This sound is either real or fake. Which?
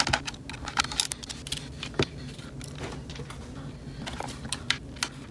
real